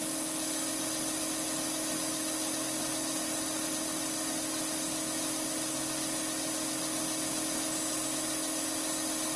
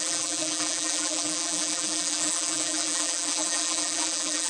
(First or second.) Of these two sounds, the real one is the first